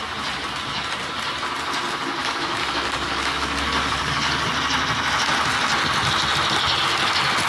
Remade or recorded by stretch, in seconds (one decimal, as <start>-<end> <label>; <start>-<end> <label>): 0.0-2.2 recorded; 2.2-4.5 remade; 4.5-7.5 recorded